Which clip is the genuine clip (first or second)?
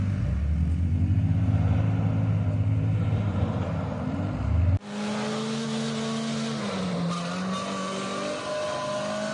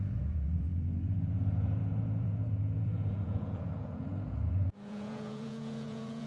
first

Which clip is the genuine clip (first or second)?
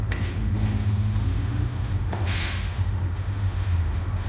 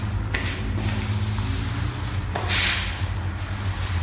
second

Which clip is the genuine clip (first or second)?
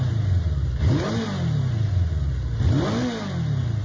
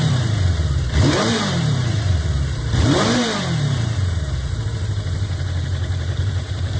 first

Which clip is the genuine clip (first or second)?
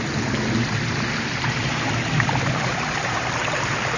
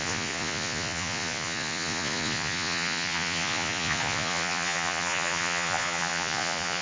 first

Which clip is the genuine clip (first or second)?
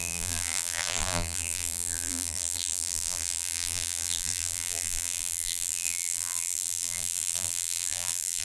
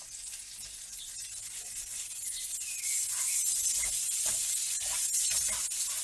second